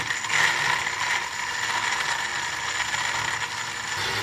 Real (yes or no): yes